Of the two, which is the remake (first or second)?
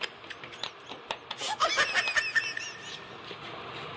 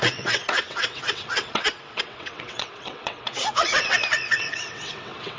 second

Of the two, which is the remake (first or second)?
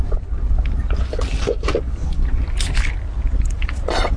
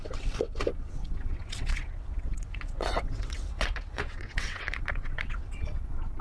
second